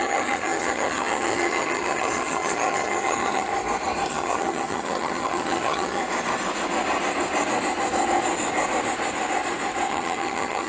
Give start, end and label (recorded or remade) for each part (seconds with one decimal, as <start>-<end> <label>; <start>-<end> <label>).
0.0-3.5 remade; 3.5-4.1 recorded; 4.1-6.0 remade; 6.0-9.9 recorded; 9.9-10.7 remade